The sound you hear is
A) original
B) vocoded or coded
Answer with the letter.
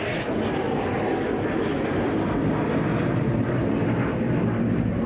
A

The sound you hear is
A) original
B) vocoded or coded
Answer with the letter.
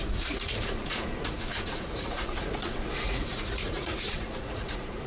B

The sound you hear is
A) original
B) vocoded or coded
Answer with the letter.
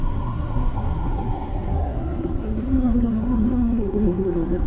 B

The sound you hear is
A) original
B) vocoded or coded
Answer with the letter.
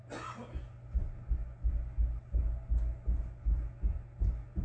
A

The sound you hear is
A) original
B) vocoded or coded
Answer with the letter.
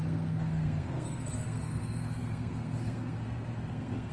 B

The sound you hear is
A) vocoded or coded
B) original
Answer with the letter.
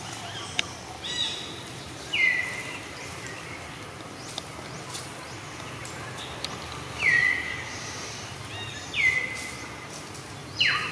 B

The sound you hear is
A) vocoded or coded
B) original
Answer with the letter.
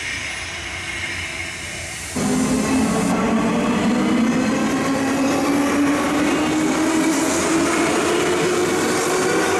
B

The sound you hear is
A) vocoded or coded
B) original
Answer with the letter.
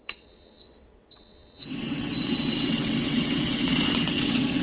A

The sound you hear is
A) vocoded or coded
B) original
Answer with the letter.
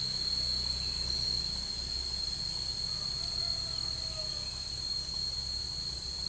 B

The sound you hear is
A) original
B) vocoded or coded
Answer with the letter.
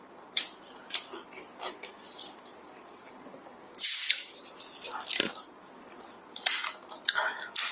A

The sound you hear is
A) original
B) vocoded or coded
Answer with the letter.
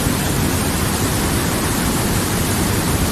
B